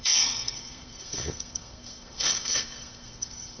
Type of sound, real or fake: fake